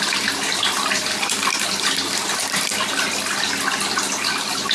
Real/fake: real